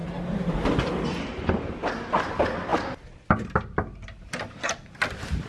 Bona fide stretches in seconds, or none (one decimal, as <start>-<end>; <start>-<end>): 0.0-5.5